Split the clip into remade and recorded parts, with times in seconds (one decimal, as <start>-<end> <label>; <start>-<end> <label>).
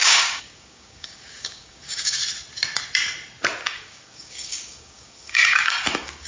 0.0-2.2 remade; 2.2-3.6 recorded; 3.6-6.3 remade